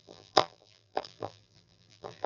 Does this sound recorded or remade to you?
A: remade